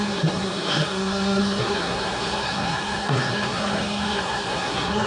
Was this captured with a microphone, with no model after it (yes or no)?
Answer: no